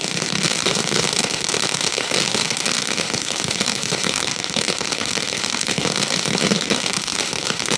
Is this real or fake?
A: fake